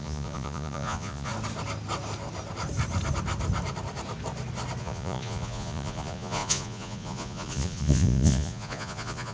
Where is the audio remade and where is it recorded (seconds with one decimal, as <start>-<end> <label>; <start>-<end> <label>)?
0.0-1.3 remade; 1.3-4.8 recorded; 4.8-9.3 remade